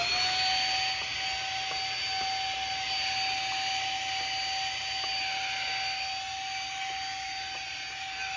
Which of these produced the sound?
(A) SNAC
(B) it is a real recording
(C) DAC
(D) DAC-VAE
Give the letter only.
B